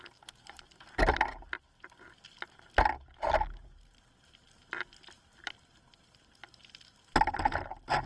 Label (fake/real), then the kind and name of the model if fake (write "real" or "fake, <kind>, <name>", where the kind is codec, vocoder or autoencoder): real